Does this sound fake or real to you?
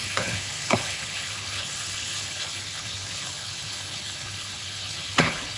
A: fake